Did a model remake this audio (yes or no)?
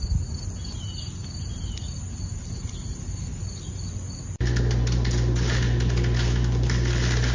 no